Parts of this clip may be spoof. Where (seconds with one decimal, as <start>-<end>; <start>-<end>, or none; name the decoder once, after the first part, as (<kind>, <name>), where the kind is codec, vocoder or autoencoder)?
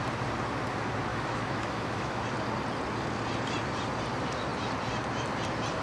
1.1-2.2 (autoencoder, DAC-VAE)